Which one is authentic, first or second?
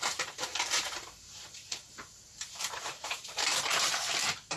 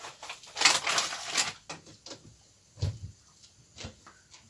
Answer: second